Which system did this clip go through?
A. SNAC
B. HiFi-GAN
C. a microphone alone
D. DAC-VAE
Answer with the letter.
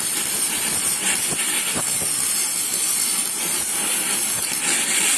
C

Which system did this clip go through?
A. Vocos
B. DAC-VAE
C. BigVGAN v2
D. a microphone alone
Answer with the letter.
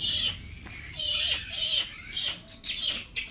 D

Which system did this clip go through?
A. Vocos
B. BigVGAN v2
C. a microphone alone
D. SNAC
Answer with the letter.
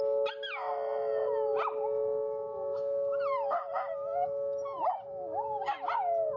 C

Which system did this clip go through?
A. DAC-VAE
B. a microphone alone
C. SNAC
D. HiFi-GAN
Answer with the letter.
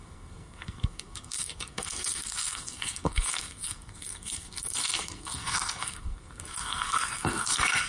C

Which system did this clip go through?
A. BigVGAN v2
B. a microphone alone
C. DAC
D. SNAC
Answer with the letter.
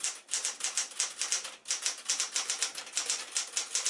B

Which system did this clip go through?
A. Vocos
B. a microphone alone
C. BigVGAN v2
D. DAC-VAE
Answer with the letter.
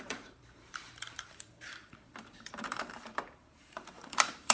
C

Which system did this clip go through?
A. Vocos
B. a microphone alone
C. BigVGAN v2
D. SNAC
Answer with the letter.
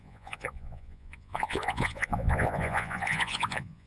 A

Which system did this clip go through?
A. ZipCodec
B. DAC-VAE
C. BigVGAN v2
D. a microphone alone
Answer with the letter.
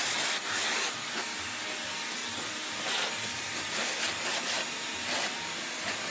D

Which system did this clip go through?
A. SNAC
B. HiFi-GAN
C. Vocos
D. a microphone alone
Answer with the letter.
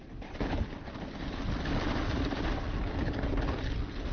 D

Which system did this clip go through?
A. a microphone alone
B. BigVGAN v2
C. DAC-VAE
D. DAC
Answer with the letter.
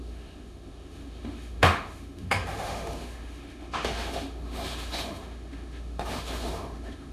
C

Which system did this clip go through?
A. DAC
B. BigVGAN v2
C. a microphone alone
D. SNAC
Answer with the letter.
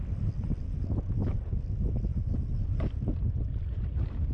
C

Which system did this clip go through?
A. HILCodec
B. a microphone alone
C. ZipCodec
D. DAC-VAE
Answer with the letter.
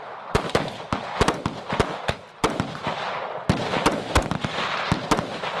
B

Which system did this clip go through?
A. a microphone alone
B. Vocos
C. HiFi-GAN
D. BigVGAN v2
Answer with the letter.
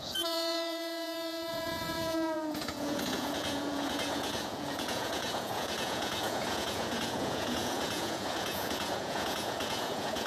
B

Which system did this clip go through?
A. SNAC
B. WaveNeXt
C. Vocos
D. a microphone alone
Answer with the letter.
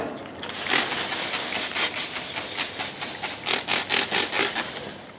D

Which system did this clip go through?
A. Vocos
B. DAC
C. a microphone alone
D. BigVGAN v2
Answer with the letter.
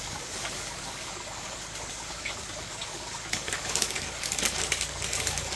B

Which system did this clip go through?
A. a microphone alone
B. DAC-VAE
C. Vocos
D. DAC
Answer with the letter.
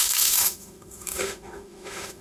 B